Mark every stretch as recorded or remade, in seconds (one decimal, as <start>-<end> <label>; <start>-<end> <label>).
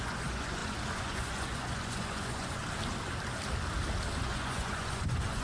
0.0-2.6 remade; 2.6-4.2 recorded; 4.2-5.4 remade